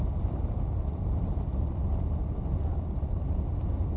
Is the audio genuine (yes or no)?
no